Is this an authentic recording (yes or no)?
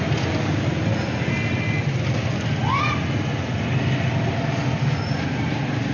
yes